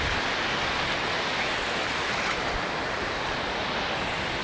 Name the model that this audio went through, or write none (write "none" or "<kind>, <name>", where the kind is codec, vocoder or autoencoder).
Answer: none